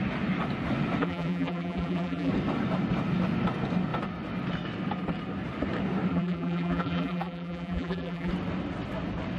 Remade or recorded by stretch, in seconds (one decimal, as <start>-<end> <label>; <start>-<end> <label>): 0.0-1.0 recorded; 1.0-2.3 remade; 2.3-6.1 recorded; 6.1-8.3 remade; 8.3-9.4 recorded